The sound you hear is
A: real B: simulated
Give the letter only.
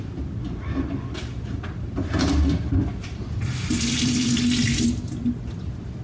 A